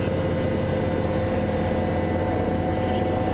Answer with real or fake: real